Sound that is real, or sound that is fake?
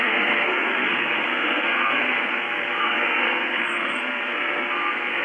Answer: fake